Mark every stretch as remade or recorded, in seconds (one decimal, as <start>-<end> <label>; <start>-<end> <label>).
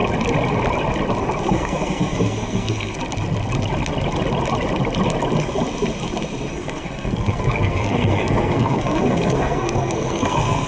0.0-1.5 recorded; 1.5-3.0 remade; 3.0-6.5 recorded; 6.5-10.7 remade